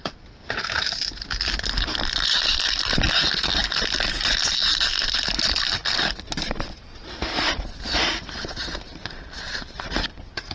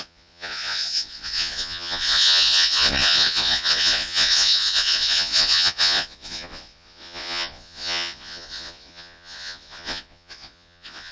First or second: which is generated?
second